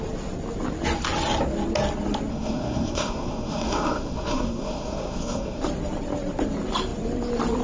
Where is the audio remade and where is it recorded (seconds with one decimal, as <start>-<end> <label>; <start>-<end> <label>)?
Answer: 0.0-2.3 recorded; 2.3-5.6 remade; 5.6-7.6 recorded